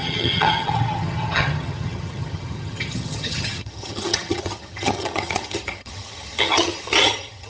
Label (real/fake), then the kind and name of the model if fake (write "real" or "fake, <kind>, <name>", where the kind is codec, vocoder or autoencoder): fake, vocoder, HiFi-GAN